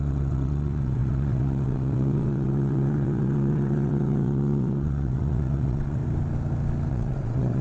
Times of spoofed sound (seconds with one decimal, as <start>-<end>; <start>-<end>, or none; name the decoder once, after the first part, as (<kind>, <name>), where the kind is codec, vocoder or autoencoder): 0.0-6.0 (vocoder, WaveNeXt); 6.9-7.6